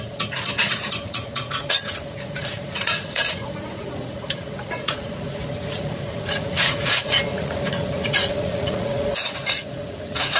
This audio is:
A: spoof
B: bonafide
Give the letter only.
A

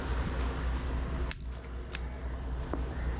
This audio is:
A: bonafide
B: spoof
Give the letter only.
A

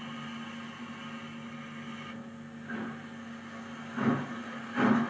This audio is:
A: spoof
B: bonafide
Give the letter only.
B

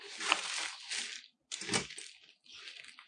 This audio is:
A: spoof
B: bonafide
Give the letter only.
B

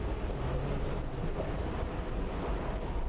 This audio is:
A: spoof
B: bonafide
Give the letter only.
B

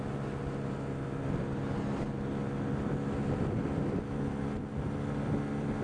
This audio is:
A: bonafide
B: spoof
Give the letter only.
A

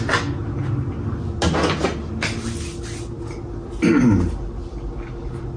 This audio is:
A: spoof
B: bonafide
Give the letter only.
B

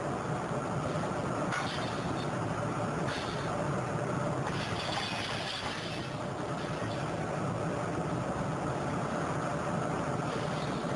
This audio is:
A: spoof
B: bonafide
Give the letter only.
B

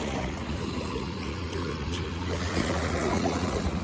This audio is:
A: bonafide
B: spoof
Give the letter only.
B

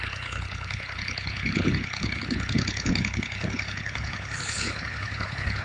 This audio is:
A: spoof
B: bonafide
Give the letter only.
A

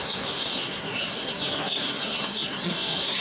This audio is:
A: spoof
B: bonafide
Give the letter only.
A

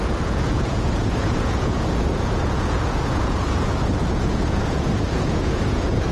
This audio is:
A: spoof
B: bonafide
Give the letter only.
A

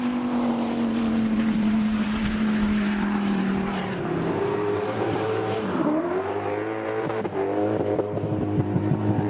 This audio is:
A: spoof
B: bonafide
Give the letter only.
A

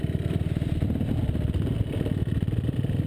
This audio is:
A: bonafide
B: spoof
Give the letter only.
A